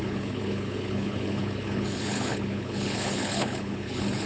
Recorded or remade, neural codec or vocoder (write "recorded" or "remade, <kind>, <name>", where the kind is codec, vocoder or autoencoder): remade, codec, HILCodec